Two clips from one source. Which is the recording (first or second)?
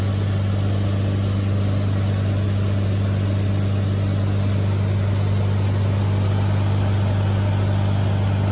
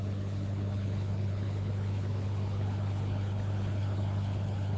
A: first